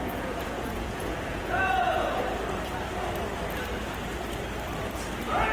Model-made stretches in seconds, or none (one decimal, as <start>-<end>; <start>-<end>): 0.0-2.2

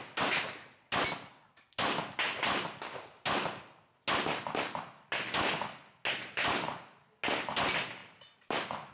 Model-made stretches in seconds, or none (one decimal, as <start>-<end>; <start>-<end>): none

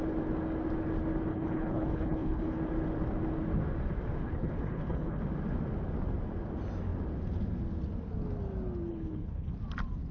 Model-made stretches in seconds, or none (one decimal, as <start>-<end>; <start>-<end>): 1.3-2.6; 4.2-5.2; 8.9-9.5